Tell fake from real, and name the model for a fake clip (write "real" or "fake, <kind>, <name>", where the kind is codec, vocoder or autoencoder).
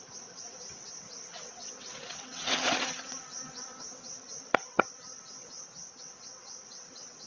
fake, vocoder, WaveNeXt